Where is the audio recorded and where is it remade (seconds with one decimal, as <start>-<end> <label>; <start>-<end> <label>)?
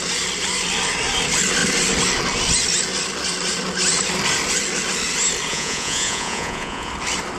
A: 0.0-5.5 recorded; 5.5-6.9 remade; 6.9-7.4 recorded